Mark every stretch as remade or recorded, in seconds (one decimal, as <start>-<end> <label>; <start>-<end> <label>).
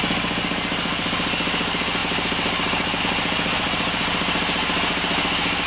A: 0.0-5.7 recorded